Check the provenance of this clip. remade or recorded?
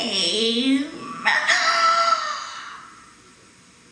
recorded